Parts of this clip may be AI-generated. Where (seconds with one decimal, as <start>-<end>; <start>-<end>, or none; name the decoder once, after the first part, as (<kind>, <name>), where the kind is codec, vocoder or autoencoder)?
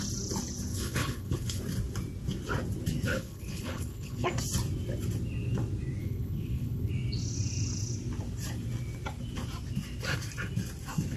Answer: 0.7-1.6 (codec, HILCodec); 3.1-4.3; 6.0-6.9